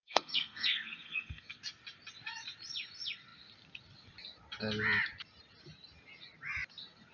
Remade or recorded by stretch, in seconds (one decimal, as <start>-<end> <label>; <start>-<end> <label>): 0.0-1.6 remade; 1.6-7.1 recorded